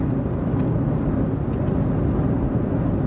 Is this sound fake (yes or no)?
no